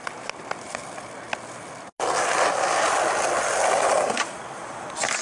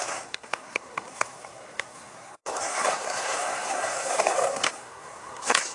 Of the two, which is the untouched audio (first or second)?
first